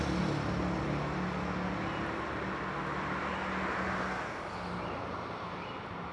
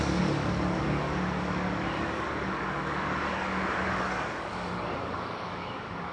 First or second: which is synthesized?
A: second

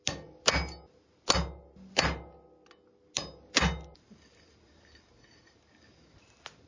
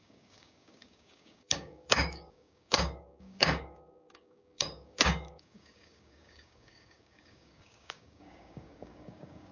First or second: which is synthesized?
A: second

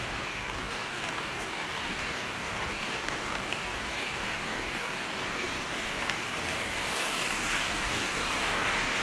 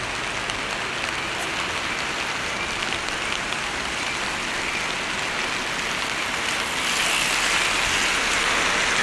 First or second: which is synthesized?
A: first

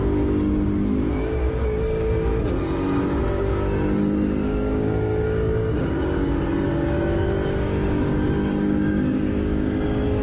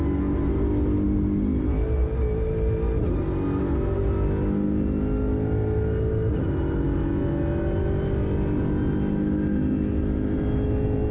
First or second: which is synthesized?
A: first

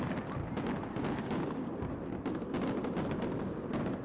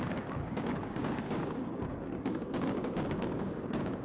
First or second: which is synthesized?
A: second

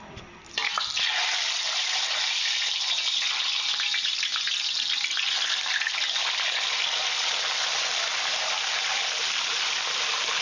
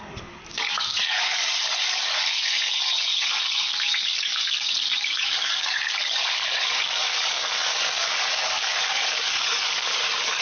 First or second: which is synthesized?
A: second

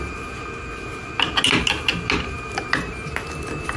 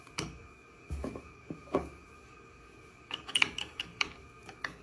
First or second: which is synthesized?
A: second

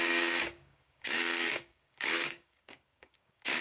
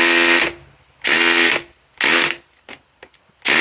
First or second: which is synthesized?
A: first